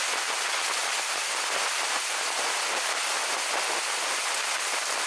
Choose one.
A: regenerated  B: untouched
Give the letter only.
B